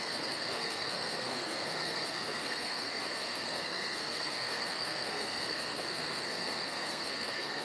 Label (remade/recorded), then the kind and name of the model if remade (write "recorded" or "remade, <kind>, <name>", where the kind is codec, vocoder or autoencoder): remade, codec, SNAC